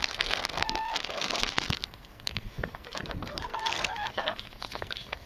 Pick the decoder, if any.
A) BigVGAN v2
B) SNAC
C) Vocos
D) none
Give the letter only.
B